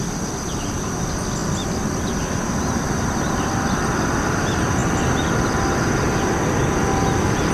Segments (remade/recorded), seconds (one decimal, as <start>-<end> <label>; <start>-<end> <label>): 0.0-7.5 recorded